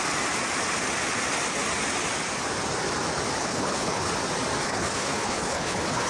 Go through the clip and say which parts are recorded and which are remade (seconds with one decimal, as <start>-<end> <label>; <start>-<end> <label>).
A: 0.0-3.4 recorded; 3.4-4.1 remade; 4.1-4.6 recorded; 4.6-6.1 remade